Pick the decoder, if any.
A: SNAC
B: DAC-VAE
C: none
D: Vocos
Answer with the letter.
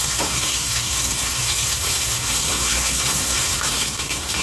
A